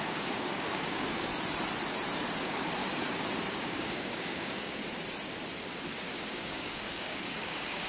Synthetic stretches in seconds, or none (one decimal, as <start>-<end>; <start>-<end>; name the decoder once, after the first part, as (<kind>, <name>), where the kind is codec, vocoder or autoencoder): 0.0-1.3 (codec, DAC); 2.4-2.8; 3.5-4.8; 5.9-7.9